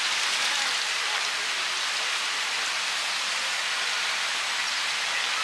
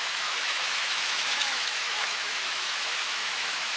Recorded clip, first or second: first